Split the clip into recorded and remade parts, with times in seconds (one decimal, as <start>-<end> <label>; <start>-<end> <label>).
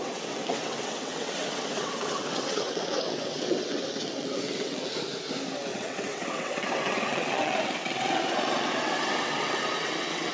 0.0-4.9 remade; 4.9-5.7 recorded; 5.7-10.3 remade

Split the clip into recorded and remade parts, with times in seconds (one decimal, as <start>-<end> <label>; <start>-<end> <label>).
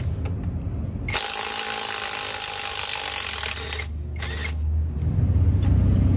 0.0-6.2 recorded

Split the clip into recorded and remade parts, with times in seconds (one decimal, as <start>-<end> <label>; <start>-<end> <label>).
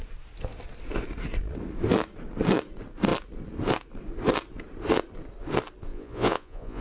0.0-5.9 recorded; 5.9-6.8 remade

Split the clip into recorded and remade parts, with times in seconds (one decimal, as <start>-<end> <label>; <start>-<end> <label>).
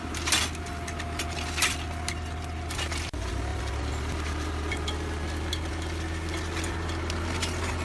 0.0-7.8 recorded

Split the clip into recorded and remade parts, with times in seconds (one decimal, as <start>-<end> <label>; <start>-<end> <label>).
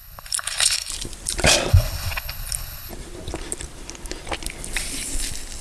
0.0-0.9 remade; 0.9-1.7 recorded; 1.7-2.9 remade; 2.9-5.6 recorded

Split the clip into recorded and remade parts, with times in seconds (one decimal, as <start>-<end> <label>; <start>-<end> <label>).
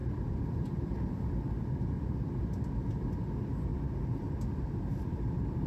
0.0-2.9 remade; 2.9-3.7 recorded; 3.7-5.7 remade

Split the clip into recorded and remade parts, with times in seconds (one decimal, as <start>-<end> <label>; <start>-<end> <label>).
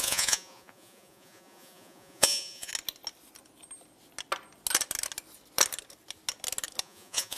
0.0-2.7 remade; 2.7-6.8 recorded; 6.8-7.4 remade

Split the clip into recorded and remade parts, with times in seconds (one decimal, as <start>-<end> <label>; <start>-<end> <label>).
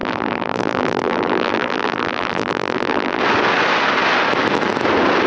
0.0-3.2 remade; 3.2-5.3 recorded